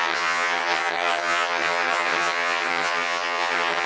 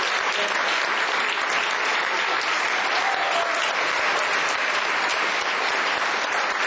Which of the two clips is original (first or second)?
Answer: second